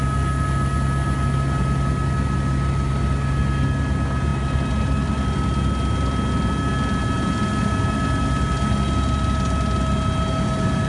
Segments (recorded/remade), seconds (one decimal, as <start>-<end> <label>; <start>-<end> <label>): 0.0-10.9 recorded